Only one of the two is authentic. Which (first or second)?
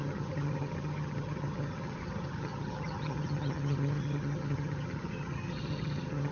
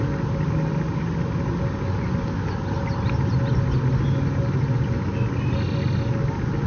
second